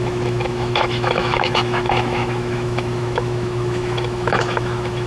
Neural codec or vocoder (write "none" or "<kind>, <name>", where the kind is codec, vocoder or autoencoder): autoencoder, DAC-VAE